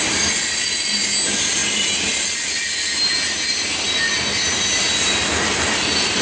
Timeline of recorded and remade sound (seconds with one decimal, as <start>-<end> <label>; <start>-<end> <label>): 0.0-6.2 recorded